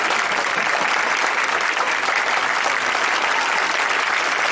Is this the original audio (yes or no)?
yes